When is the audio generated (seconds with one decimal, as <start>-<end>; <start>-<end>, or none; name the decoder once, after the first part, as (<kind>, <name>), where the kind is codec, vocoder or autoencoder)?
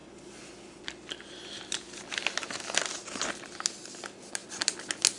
none